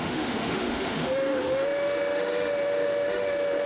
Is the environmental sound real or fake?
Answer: fake